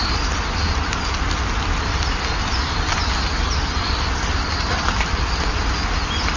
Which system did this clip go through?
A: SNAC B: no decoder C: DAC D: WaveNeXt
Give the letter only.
B